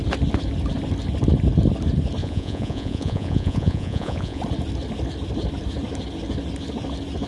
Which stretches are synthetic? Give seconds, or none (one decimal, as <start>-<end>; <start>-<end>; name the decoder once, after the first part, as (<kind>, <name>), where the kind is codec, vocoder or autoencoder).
2.2-4.4 (vocoder, Vocos)